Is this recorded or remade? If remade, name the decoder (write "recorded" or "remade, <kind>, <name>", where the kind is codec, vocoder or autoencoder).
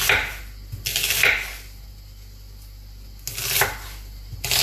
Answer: recorded